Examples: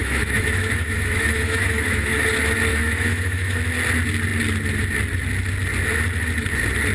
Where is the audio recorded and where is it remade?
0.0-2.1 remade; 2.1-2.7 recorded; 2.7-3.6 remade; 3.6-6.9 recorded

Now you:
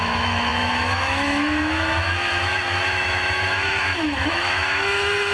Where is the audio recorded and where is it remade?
0.0-5.3 remade

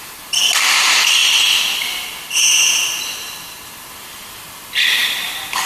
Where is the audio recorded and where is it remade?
0.0-5.7 recorded

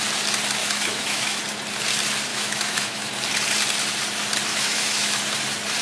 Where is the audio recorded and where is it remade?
0.0-0.6 recorded; 0.6-1.4 remade; 1.4-2.3 recorded; 2.3-3.1 remade; 3.1-4.5 recorded; 4.5-5.2 remade; 5.2-5.8 recorded